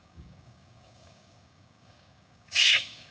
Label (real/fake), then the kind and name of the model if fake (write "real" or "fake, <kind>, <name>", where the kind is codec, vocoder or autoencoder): fake, codec, DAC